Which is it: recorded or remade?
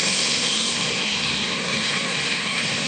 remade